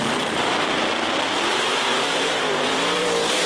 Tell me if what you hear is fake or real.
fake